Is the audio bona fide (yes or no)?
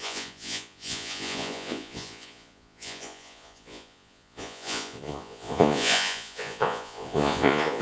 no